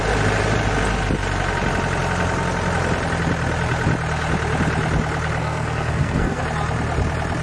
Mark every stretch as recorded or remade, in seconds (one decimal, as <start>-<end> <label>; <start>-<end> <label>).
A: 0.0-5.4 recorded; 5.4-6.4 remade; 6.4-7.4 recorded